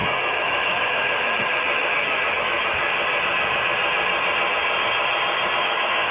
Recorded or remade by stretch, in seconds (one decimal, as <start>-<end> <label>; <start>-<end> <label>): 0.0-2.9 remade; 2.9-5.6 recorded; 5.6-6.1 remade